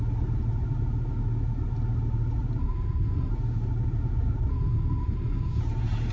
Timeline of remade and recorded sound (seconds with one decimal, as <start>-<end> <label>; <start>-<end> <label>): 0.0-2.6 recorded; 2.6-3.3 remade; 3.3-4.5 recorded; 4.5-5.6 remade; 5.6-6.1 recorded